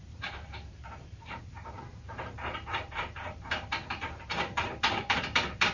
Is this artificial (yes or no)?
yes